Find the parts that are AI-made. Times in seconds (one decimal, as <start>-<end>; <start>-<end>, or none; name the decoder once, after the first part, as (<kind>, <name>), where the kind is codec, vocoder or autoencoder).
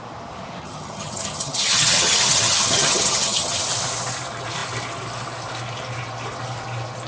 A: 0.6-3.6 (vocoder, HiFi-GAN)